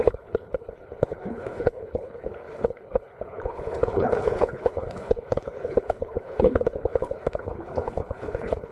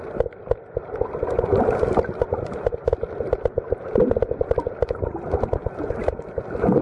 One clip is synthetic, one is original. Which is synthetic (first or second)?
first